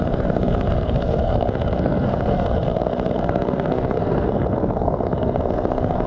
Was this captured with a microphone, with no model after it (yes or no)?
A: no